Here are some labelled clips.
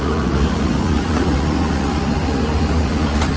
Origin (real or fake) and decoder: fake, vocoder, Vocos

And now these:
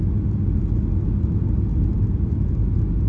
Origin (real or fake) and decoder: real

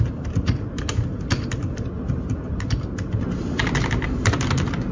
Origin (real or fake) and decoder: real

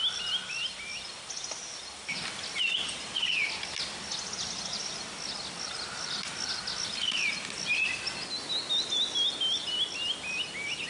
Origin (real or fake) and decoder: real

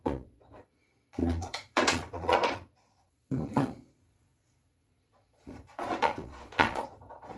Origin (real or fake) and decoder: fake, vocoder, Vocos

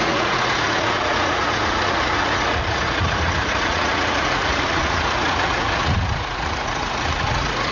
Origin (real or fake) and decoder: fake, vocoder, Vocos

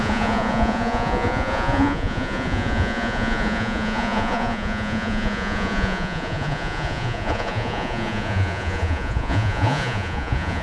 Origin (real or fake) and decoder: fake, vocoder, Vocos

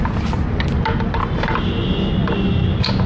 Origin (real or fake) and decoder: real